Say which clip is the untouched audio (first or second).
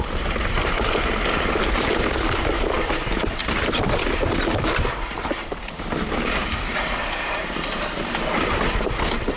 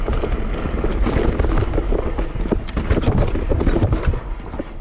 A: second